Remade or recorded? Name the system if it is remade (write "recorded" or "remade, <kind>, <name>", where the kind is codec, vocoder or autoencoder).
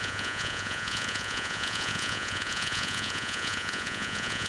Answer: remade, vocoder, Vocos